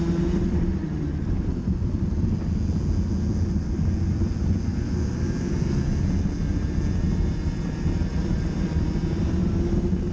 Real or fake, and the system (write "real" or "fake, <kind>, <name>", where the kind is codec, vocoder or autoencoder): real